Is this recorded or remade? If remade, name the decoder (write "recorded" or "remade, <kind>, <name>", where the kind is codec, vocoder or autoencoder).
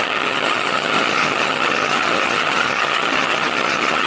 remade, vocoder, HiFi-GAN